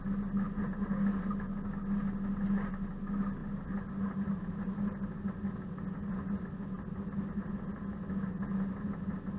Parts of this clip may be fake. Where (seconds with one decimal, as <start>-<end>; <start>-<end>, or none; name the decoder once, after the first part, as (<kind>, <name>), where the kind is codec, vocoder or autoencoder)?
none